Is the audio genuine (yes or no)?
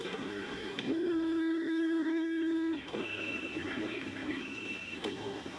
no